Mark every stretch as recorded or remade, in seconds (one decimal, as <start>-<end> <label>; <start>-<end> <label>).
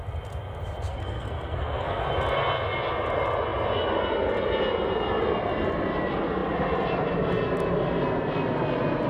0.0-0.9 recorded; 0.9-2.0 remade; 2.0-9.1 recorded